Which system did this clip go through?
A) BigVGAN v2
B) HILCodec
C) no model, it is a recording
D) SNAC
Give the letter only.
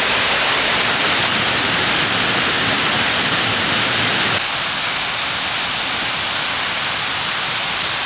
C